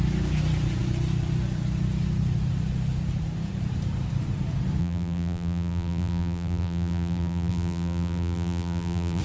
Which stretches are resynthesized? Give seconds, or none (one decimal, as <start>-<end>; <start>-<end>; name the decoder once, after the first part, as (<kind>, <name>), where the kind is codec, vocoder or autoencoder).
4.8-9.2 (vocoder, BigVGAN v2)